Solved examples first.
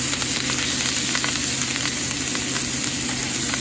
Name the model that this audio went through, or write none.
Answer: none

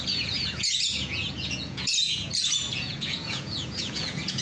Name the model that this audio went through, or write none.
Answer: vocoder, Vocos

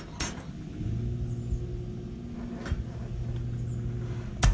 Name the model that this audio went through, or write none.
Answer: none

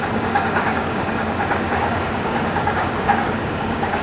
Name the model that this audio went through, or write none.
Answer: codec, DAC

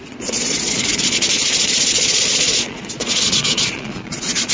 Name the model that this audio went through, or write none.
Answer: vocoder, Vocos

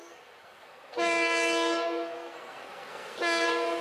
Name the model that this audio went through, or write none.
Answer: codec, SNAC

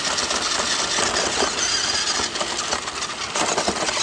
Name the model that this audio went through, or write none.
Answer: none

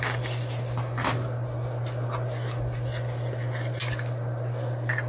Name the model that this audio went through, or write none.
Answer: none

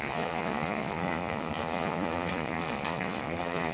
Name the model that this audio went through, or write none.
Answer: vocoder, Vocos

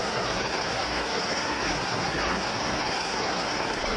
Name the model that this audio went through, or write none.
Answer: codec, SNAC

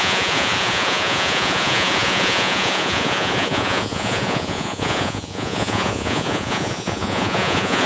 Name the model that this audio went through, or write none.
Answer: vocoder, Vocos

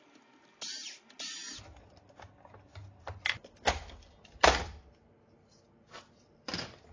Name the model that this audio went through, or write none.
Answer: none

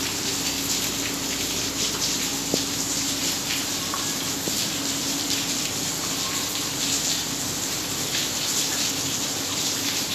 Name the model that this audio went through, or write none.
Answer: none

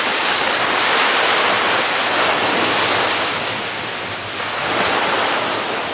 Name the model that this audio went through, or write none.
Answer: none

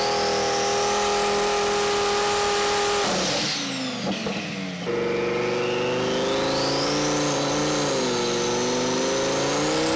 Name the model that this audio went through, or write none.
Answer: none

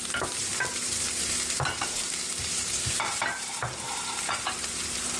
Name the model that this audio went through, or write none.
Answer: vocoder, BigVGAN v2